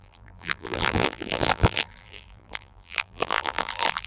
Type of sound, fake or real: fake